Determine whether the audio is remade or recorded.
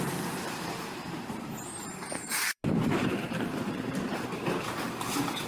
remade